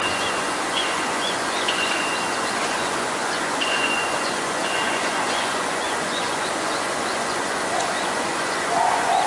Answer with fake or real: fake